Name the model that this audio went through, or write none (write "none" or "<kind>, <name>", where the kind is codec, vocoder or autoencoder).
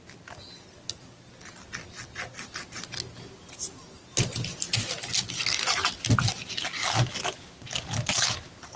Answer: none